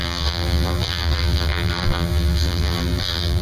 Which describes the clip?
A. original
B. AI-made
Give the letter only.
B